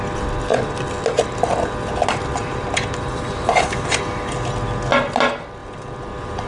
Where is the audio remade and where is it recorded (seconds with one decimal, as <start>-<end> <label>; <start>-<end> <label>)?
0.0-2.4 recorded; 2.4-4.0 remade; 4.0-5.6 recorded; 5.6-6.5 remade